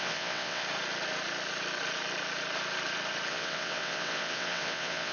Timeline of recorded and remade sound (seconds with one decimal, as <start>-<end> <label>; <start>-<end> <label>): 0.0-0.6 remade; 0.6-3.3 recorded; 3.3-5.1 remade